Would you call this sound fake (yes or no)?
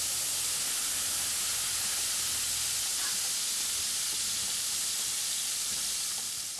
no